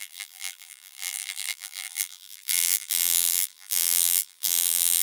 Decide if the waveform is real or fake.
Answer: fake